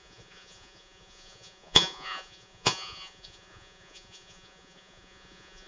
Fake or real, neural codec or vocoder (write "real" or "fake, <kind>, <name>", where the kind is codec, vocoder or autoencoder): fake, vocoder, Vocos